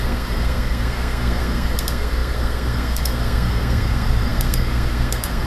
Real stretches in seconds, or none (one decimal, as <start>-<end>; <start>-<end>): none